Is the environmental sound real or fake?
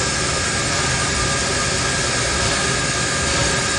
real